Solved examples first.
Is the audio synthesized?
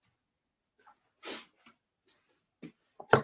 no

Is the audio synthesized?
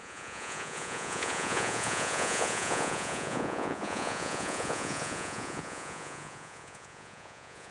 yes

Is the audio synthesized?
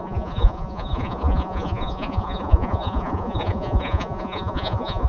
yes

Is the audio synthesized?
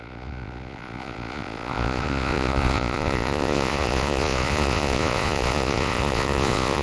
yes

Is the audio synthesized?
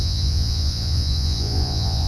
yes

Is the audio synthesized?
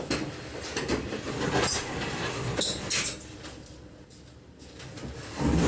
no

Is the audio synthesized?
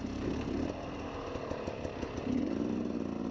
no